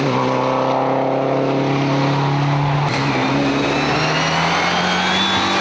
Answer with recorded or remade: recorded